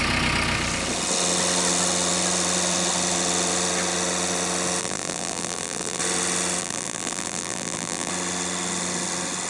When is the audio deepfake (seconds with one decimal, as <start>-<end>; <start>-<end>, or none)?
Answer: 4.8-6.0; 6.6-8.1